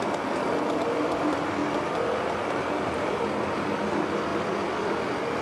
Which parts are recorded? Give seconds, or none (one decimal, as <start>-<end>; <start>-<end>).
0.0-5.4